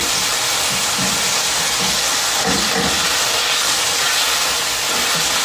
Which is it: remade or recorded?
recorded